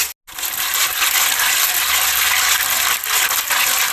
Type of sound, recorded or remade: recorded